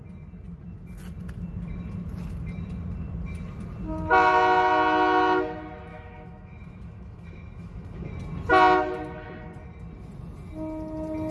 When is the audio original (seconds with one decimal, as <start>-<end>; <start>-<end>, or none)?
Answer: 0.0-5.9; 8.1-11.3